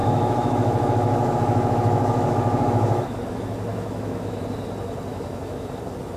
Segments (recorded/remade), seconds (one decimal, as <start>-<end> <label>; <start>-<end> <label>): 0.0-3.2 remade; 3.2-3.7 recorded; 3.7-4.4 remade; 4.4-5.1 recorded; 5.1-5.8 remade; 5.8-6.2 recorded